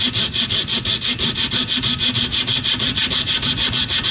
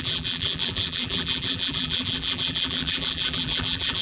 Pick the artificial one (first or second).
second